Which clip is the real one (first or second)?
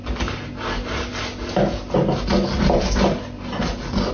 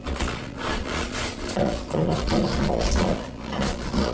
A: first